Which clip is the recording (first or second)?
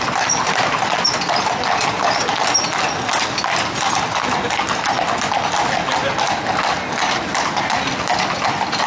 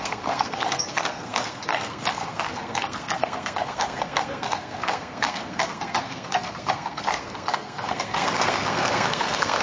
first